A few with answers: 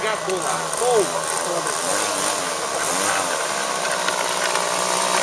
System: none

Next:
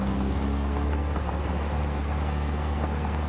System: codec, SNAC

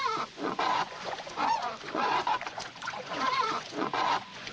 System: vocoder, Vocos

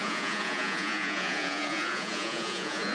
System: vocoder, Vocos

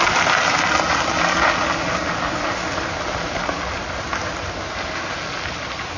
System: none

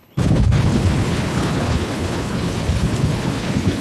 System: codec, HILCodec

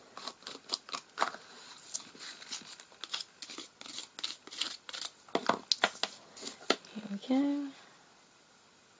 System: none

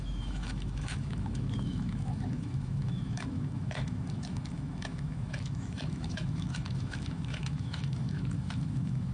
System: autoencoder, DAC-VAE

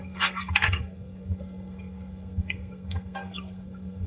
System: codec, SNAC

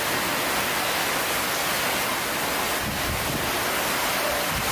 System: none